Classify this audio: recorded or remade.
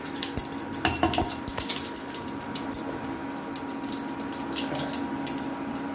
recorded